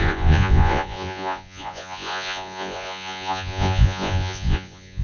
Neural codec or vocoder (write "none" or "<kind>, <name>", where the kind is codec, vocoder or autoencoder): vocoder, Vocos